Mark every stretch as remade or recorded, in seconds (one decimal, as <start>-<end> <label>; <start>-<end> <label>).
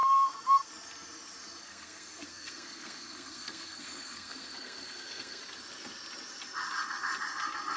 0.0-0.7 remade; 0.7-1.6 recorded; 1.6-5.4 remade; 5.4-7.8 recorded